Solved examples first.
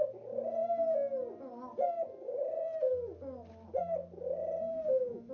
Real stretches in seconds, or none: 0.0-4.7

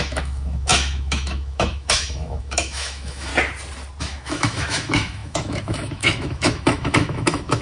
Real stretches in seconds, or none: 3.3-4.0

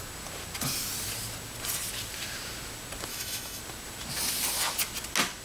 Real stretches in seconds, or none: 0.0-3.1; 3.6-5.4

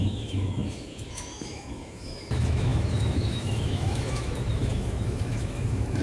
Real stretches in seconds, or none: none

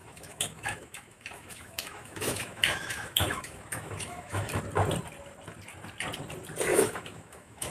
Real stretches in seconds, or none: 4.6-6.7

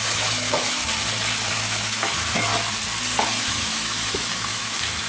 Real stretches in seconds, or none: 0.8-1.4; 2.5-3.4

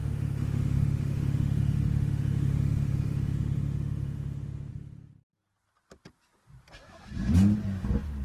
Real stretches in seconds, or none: 4.7-8.2

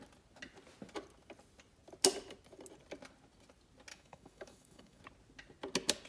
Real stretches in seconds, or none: 0.0-3.9; 5.0-6.1